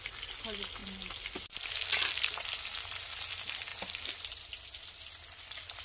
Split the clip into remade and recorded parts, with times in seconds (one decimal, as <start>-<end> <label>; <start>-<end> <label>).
0.0-5.8 recorded